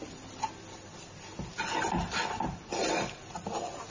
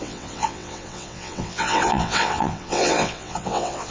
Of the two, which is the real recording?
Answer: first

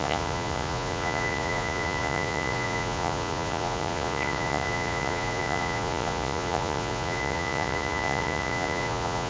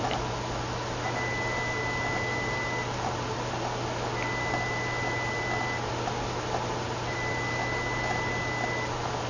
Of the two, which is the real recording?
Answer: second